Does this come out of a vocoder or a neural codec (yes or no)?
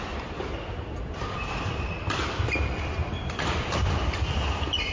yes